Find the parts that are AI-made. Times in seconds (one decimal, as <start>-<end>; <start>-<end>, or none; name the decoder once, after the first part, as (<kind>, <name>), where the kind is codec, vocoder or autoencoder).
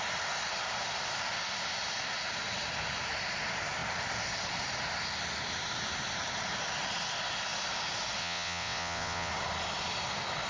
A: 8.2-9.3 (vocoder, WaveNeXt)